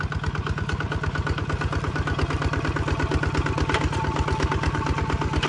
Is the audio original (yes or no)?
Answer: yes